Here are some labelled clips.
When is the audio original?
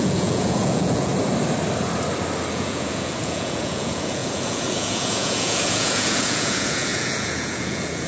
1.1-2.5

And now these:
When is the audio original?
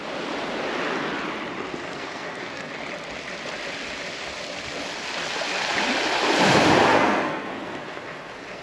0.0-1.8; 2.7-6.9